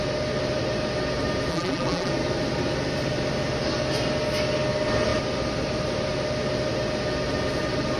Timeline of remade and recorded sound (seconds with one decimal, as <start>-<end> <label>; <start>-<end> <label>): 0.0-1.5 recorded; 1.5-2.1 remade; 2.1-8.0 recorded